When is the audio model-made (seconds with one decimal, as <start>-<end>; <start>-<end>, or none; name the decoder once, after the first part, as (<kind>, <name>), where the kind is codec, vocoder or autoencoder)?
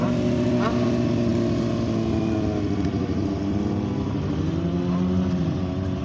none